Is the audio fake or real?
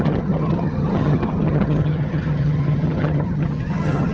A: fake